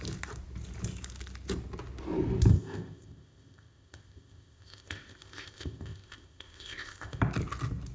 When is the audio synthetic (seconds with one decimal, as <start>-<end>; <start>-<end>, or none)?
2.5-7.2